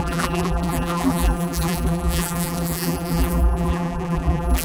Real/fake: fake